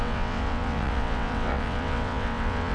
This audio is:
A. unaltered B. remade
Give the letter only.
B